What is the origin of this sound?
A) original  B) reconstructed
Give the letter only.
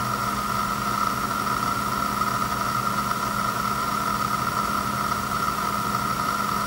A